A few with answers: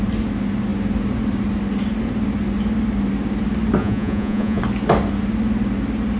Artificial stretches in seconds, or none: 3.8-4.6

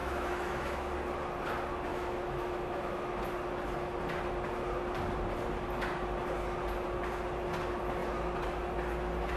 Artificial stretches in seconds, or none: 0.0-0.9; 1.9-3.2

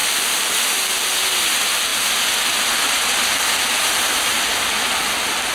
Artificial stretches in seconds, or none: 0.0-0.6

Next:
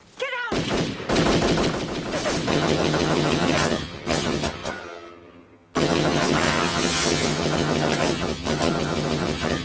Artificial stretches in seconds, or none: 2.5-9.6